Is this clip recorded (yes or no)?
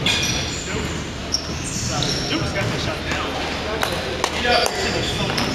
yes